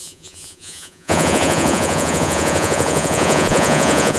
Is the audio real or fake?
fake